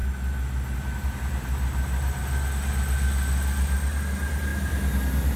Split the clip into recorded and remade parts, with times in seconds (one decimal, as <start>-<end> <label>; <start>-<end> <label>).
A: 0.0-5.4 recorded